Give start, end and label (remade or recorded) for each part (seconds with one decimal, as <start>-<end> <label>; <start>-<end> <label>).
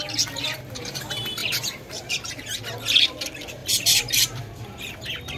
0.0-1.4 recorded; 1.4-2.3 remade; 2.3-3.6 recorded; 3.6-4.9 remade; 4.9-5.4 recorded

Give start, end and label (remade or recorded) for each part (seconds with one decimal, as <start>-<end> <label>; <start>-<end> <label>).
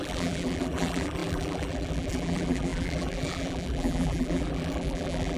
0.0-5.4 remade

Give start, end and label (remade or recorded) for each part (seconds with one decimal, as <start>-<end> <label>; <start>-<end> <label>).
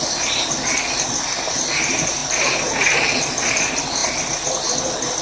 0.0-5.2 remade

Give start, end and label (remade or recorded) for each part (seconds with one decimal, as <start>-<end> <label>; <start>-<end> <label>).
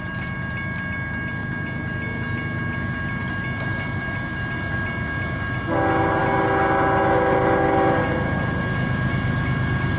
0.0-10.0 recorded